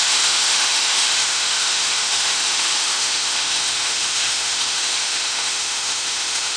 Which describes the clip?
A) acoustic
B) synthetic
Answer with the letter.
B